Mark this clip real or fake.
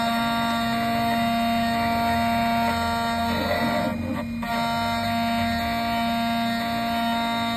real